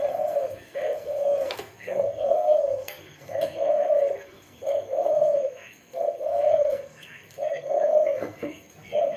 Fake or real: fake